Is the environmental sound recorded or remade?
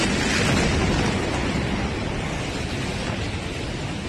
recorded